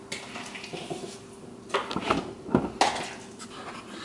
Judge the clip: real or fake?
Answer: real